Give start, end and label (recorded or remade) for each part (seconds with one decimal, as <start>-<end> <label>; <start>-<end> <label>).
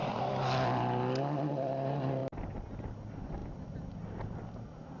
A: 0.0-5.0 recorded